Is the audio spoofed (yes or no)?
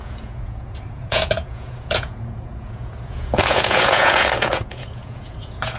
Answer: yes